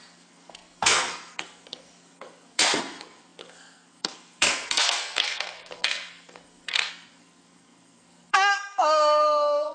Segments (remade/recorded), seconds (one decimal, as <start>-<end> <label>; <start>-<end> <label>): 0.0-9.7 remade